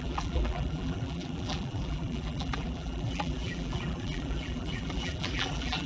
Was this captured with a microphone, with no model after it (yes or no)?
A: no